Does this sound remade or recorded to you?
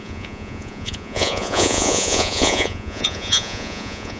remade